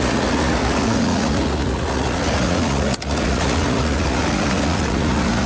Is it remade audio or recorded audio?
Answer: remade